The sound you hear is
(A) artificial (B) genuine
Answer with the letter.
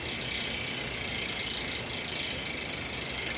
B